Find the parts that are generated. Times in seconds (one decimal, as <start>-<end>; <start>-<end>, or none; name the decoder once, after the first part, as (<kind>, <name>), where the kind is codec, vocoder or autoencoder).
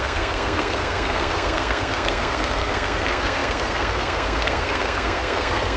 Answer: 0.0-5.8 (codec, SNAC)